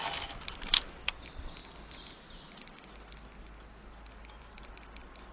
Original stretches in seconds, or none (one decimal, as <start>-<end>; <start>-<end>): 0.0-5.3